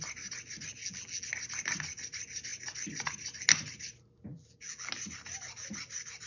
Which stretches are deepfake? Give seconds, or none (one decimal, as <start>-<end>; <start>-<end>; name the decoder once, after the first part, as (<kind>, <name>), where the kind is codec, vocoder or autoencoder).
0.8-1.3 (vocoder, BigVGAN v2); 4.3-4.9